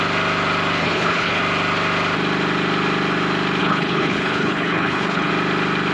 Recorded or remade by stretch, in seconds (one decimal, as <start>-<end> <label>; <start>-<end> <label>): 0.0-0.8 recorded; 0.8-1.4 remade; 1.4-3.6 recorded; 3.6-5.3 remade; 5.3-5.9 recorded

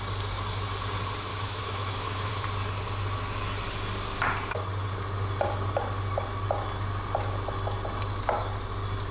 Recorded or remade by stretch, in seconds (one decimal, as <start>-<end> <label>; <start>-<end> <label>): 0.0-1.3 recorded; 1.3-2.3 remade; 2.3-9.1 recorded

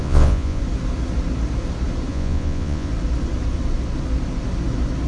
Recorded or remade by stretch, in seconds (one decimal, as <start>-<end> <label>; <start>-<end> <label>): 0.0-0.6 remade; 0.6-2.1 recorded; 2.1-2.9 remade; 2.9-5.1 recorded

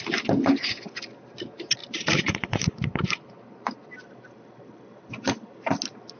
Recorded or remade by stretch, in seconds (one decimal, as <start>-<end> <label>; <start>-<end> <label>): 0.0-1.8 recorded; 1.8-5.1 remade; 5.1-6.2 recorded